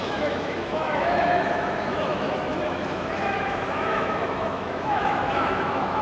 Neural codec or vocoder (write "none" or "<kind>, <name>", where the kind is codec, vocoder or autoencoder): autoencoder, DAC-VAE